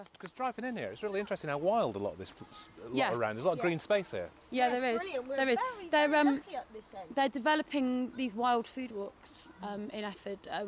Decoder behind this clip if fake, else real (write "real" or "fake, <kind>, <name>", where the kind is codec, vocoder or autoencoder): real